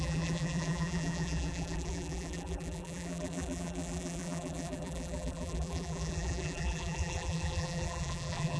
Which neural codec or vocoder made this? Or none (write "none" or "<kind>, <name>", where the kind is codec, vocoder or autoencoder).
vocoder, BigVGAN v2